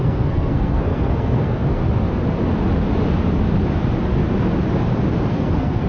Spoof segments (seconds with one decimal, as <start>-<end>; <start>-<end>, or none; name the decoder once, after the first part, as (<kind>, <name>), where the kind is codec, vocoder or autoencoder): 0.0-1.8 (codec, SNAC); 5.3-5.9